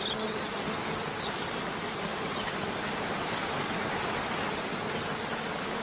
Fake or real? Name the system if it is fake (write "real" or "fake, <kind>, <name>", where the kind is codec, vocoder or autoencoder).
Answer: real